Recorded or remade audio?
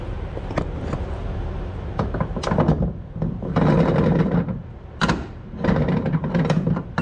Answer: recorded